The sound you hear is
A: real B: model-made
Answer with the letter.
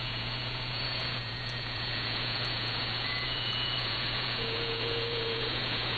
B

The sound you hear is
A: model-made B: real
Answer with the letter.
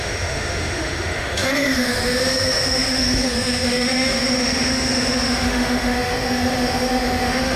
A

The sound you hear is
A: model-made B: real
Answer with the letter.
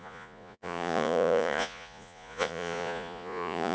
A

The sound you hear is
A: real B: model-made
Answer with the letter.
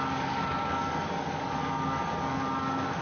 B